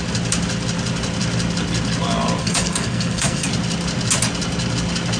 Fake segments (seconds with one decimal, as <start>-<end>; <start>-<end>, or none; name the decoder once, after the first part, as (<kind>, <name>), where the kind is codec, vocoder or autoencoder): 2.4-3.5 (codec, SNAC)